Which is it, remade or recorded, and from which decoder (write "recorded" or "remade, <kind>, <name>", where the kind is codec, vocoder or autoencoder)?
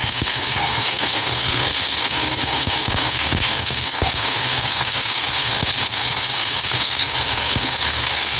remade, codec, SNAC